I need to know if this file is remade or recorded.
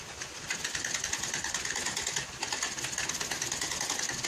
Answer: recorded